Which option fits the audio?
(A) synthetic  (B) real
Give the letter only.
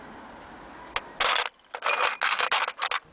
B